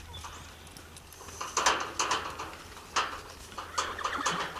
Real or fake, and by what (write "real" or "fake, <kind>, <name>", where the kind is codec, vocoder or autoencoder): real